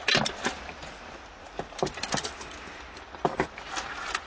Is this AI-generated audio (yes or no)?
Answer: no